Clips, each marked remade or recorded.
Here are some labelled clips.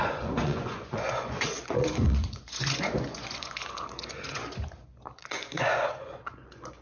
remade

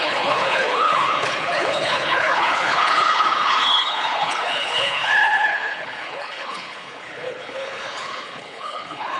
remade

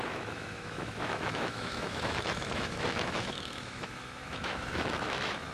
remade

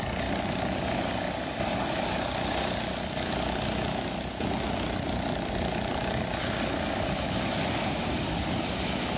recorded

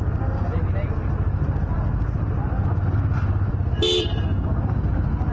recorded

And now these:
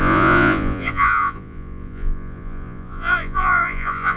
remade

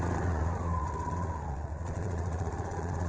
remade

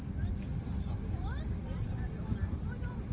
recorded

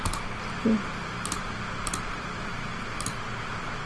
recorded